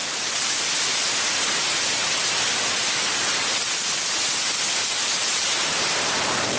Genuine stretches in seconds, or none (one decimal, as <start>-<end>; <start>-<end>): 0.0-6.6